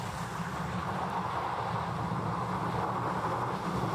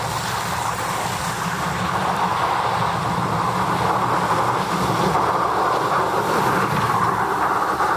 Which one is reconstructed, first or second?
second